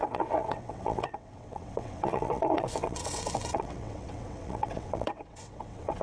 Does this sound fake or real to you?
fake